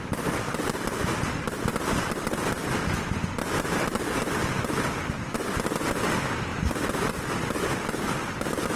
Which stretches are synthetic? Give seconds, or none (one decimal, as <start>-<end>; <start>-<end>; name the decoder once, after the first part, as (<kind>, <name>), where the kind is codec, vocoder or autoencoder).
none